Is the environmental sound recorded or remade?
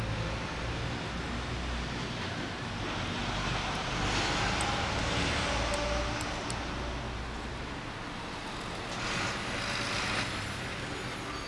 recorded